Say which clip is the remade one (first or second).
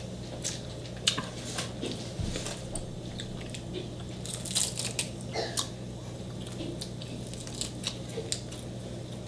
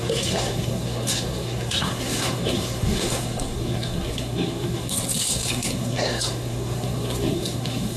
second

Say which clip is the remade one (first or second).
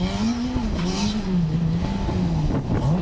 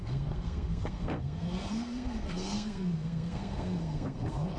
second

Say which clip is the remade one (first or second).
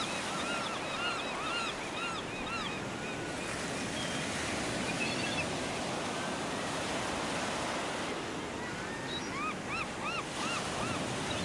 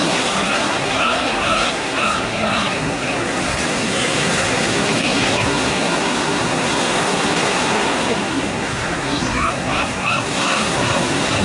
second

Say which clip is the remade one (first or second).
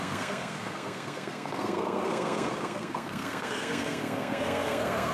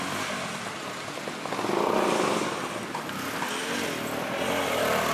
first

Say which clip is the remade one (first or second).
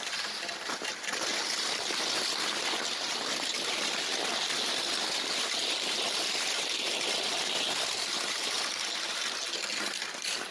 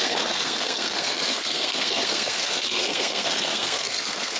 second